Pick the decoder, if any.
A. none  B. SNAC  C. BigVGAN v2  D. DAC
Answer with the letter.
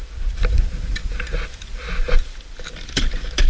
A